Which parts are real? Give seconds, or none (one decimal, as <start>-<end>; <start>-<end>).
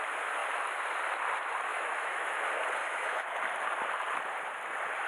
0.0-1.7; 2.4-2.8; 3.4-5.1